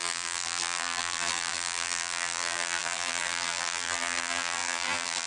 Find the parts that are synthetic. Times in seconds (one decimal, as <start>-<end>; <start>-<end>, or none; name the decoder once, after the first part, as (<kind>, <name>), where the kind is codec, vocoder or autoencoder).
0.0-5.3 (vocoder, BigVGAN v2)